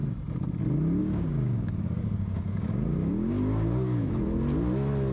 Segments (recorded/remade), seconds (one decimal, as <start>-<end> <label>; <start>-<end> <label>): 0.0-1.0 recorded; 1.0-4.1 remade; 4.1-5.1 recorded